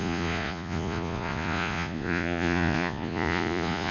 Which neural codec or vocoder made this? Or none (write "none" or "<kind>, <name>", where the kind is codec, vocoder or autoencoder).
vocoder, Vocos